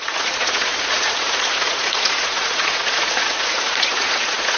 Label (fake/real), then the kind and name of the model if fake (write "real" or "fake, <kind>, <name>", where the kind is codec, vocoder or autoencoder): fake, vocoder, Vocos